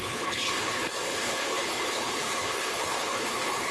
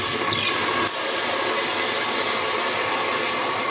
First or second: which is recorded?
second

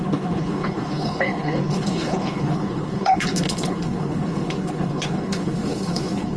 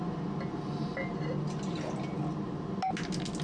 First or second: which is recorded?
second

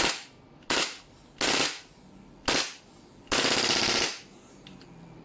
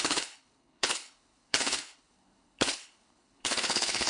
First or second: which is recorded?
first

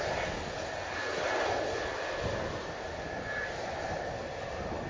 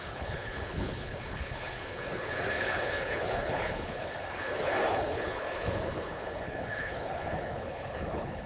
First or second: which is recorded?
first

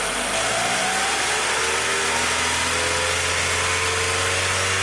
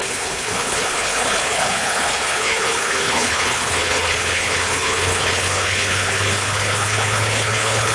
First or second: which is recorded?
first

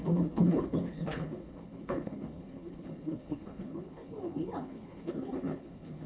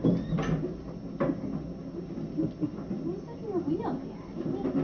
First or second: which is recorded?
second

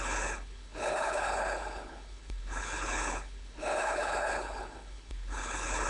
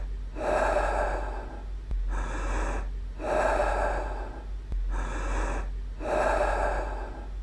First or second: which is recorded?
second